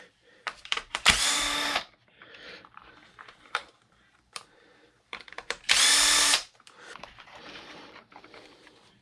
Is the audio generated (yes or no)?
yes